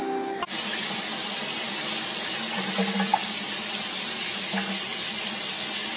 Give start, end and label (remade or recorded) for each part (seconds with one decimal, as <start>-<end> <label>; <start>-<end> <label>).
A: 0.0-6.0 recorded